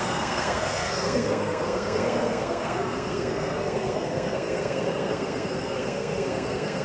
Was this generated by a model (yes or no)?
yes